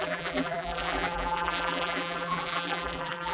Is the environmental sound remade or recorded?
remade